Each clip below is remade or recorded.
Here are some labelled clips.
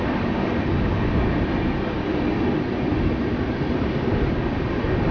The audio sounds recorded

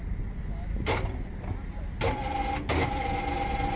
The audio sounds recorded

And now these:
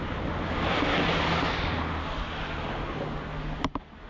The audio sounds recorded